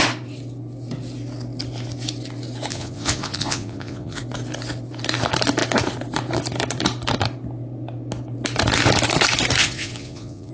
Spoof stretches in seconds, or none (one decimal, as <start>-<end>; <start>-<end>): 2.7-4.2; 9.6-10.5

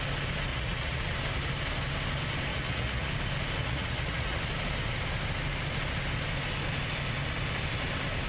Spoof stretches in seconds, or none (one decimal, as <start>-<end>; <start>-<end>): 0.5-1.0; 2.5-3.1; 3.6-4.4

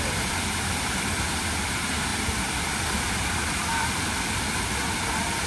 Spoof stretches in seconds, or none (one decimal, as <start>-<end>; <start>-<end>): none